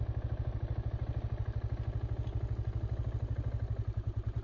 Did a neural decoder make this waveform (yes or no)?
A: no